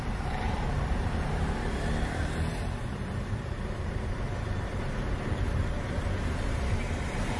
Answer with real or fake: fake